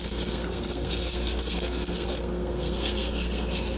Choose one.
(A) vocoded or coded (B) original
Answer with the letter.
A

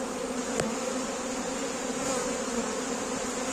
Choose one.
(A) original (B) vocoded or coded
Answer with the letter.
A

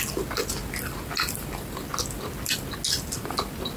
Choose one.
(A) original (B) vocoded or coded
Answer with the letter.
A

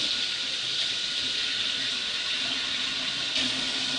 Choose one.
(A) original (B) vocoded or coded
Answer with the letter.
A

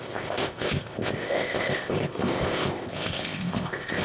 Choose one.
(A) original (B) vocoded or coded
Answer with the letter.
B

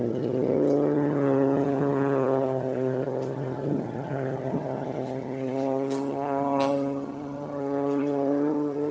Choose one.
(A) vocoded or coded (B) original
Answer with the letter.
A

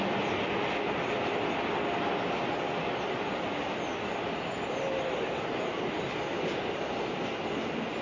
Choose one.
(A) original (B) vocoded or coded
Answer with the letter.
A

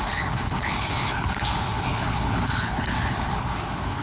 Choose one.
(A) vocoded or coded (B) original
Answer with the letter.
A